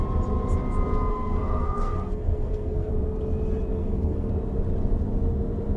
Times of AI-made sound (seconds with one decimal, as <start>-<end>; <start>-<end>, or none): 1.1-2.9; 3.7-4.3